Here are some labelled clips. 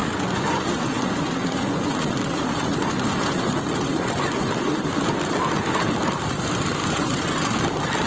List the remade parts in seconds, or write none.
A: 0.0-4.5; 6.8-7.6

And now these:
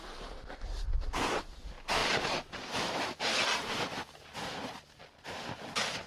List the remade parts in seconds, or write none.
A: none

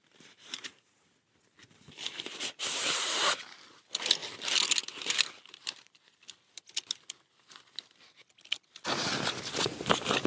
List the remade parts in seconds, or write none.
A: 0.0-1.1; 1.6-2.4

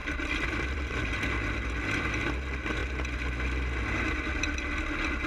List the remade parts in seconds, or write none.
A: 0.0-1.0

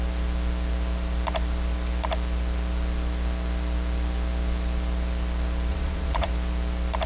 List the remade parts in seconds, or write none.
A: 5.7-6.3

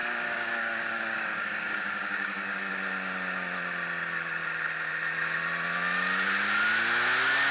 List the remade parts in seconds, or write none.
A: 0.0-2.7